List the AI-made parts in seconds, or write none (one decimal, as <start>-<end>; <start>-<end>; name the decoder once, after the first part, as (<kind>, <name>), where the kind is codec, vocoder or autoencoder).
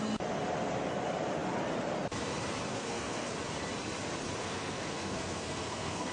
2.7-3.3 (codec, SNAC); 4.4-6.1